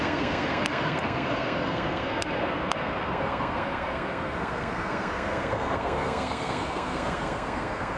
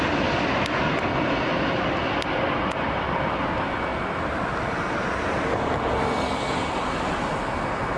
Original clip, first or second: second